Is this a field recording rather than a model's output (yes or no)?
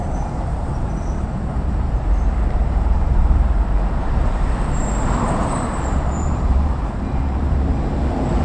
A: no